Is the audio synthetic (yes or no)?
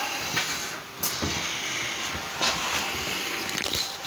yes